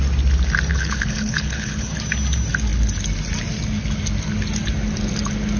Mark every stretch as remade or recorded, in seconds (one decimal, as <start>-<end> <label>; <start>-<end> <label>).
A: 0.0-0.7 recorded; 0.7-1.9 remade; 1.9-5.6 recorded